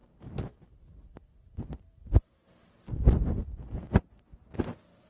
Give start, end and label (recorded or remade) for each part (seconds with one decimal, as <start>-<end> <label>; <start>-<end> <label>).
0.0-2.7 remade; 2.7-3.4 recorded; 3.4-4.2 remade; 4.2-5.1 recorded